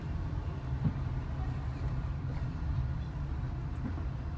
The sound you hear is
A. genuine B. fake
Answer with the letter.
A